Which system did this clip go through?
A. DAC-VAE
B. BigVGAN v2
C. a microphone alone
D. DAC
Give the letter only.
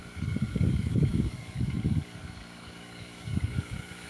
D